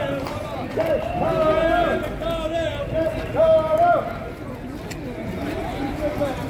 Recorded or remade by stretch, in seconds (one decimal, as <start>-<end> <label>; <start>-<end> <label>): 0.0-6.5 recorded